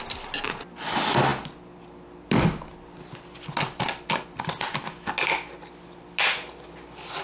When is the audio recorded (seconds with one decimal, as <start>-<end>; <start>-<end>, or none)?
0.0-7.2